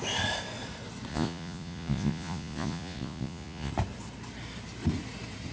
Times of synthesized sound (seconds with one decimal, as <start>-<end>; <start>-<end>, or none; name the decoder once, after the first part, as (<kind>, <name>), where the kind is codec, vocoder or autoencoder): 1.1-3.7 (vocoder, Vocos)